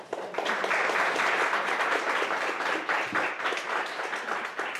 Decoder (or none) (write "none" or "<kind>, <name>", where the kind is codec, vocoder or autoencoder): none